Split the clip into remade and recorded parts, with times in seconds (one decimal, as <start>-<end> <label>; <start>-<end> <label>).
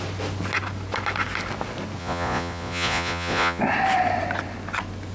0.0-2.0 recorded; 2.0-3.6 remade; 3.6-5.1 recorded